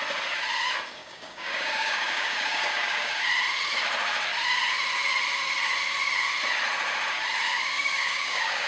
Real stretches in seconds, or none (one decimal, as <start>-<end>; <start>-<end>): 0.0-1.0; 3.2-7.5